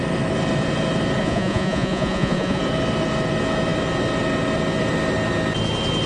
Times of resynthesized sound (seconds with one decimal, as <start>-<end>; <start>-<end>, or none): 1.2-2.6